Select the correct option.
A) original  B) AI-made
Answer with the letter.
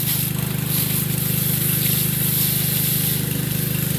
A